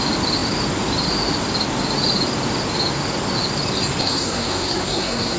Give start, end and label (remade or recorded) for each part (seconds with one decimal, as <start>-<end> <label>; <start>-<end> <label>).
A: 0.0-4.0 recorded; 4.0-5.4 remade